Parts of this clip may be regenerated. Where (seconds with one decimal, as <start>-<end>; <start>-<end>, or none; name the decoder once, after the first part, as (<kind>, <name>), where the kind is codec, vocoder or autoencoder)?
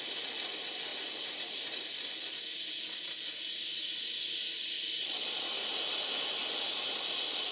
5.0-5.5 (vocoder, Vocos)